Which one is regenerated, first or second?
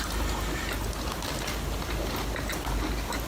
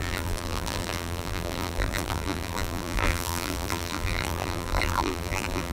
second